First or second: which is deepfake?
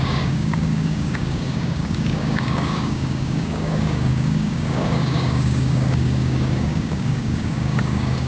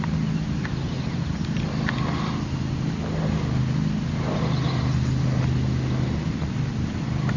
first